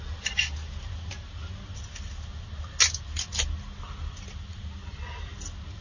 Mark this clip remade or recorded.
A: recorded